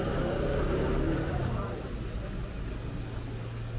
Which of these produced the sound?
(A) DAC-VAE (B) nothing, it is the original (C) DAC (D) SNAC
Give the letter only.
B